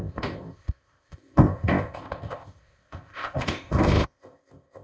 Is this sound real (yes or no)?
no